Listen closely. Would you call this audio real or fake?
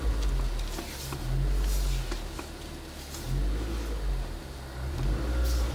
real